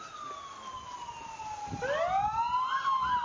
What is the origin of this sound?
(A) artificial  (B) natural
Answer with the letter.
B